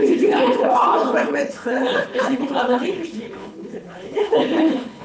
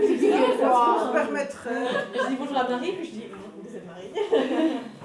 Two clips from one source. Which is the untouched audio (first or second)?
second